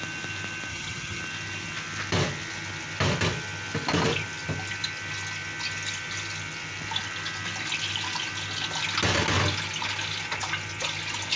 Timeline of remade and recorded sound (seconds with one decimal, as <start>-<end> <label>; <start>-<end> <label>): 0.0-0.7 recorded; 0.7-1.2 remade; 1.2-11.4 recorded